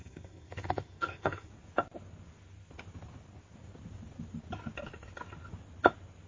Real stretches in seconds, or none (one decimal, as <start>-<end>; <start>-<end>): 1.5-6.3